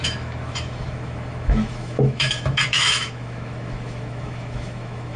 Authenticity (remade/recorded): remade